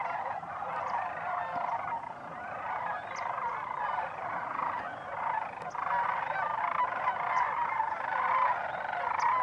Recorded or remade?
recorded